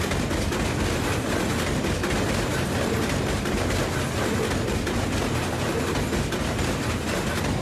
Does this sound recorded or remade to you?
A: recorded